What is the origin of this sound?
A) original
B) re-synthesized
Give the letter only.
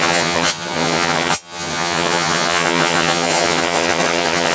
B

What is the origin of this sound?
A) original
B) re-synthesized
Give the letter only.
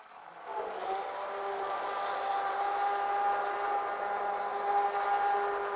A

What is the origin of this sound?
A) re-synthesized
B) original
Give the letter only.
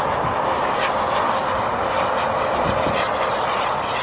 B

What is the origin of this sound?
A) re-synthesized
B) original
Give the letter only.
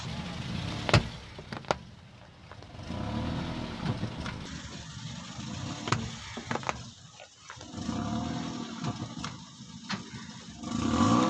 B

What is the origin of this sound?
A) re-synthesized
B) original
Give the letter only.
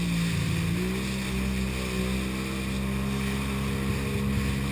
B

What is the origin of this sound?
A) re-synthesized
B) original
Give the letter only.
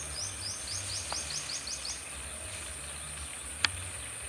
B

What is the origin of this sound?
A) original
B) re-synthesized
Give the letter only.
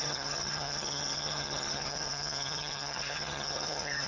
B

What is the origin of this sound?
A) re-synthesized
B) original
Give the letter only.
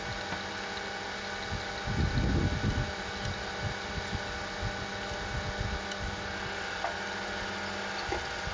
B